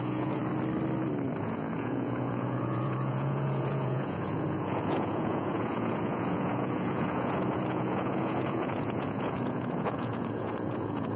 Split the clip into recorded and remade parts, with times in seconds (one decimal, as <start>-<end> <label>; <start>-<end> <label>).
0.0-0.4 remade; 0.4-1.4 recorded; 1.4-11.2 remade